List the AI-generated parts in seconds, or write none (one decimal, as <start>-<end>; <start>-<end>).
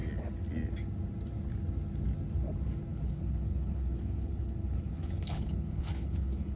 2.9-6.6